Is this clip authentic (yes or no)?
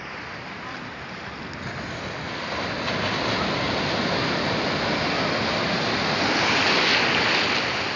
yes